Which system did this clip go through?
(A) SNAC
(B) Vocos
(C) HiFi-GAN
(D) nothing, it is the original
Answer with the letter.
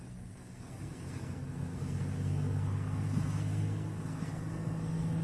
A